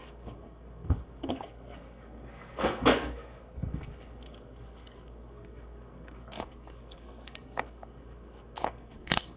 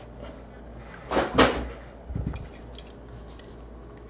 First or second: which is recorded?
second